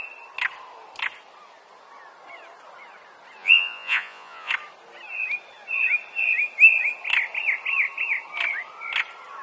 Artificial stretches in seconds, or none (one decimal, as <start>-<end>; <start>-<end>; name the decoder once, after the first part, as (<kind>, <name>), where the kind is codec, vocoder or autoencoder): 3.4-4.5 (vocoder, Vocos)